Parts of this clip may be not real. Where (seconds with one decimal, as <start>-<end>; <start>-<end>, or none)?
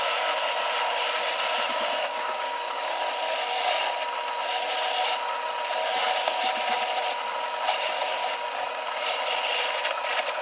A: 1.7-3.0